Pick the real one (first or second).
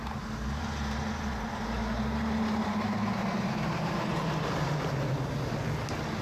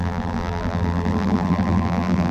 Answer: first